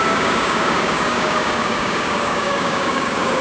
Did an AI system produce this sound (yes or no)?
yes